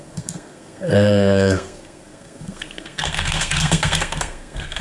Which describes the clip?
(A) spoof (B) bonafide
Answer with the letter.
A